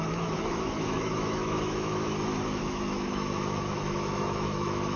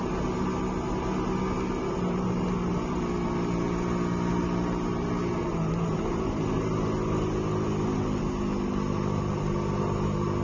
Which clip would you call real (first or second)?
second